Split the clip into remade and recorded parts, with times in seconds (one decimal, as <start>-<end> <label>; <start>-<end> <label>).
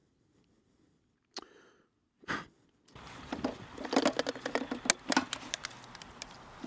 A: 0.0-4.0 remade; 4.0-6.7 recorded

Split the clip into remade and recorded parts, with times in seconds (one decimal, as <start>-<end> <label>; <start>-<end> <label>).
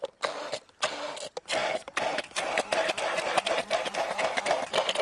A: 0.0-1.6 recorded; 1.6-4.6 remade; 4.6-5.0 recorded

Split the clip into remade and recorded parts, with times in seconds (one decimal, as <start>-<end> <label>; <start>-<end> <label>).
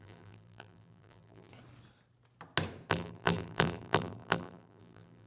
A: 0.0-1.5 remade; 1.5-2.9 recorded; 2.9-5.3 remade